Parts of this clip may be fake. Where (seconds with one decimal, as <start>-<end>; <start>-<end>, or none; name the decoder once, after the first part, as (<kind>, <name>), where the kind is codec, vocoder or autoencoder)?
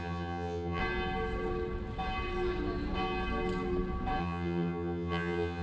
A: 0.0-0.8 (vocoder, HiFi-GAN); 4.2-5.6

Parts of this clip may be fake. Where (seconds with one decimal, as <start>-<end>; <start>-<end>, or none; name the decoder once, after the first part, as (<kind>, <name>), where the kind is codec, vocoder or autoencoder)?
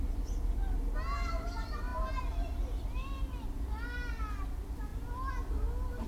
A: none